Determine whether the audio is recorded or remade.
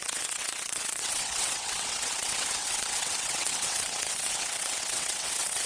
remade